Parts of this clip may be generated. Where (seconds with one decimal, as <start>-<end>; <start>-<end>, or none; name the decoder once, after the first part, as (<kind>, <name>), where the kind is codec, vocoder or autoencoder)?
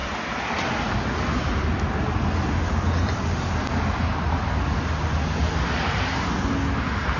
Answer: none